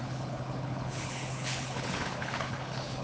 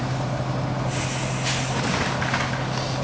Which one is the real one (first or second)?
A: second